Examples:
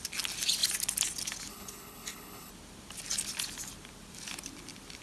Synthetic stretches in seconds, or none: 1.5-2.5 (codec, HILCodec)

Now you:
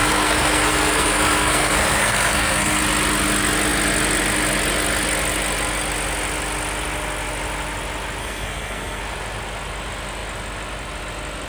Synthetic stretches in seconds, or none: 0.0-2.8 (codec, SNAC); 8.2-9.0

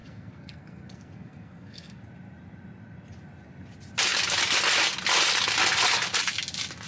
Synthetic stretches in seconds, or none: 0.0-2.0 (codec, SNAC)